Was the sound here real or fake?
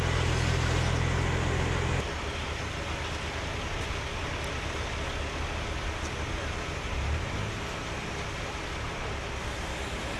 real